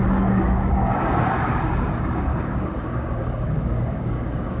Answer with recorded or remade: remade